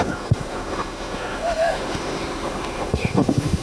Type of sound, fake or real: fake